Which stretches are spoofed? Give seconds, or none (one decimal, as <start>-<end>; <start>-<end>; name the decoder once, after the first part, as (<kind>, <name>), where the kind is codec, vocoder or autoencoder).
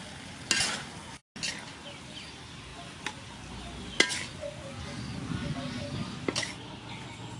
none